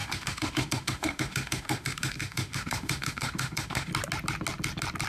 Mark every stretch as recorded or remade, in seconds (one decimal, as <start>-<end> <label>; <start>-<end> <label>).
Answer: 0.0-3.9 remade; 3.9-5.1 recorded